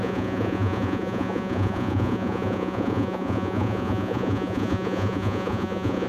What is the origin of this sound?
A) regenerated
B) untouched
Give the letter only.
A